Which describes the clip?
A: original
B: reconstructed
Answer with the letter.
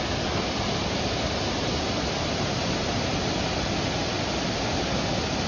A